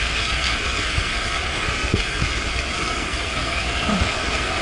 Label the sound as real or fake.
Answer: fake